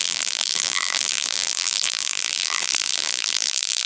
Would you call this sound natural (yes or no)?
no